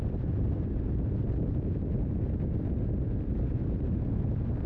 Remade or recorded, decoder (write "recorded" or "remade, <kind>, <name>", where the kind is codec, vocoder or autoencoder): recorded